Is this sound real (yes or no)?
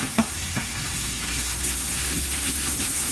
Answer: no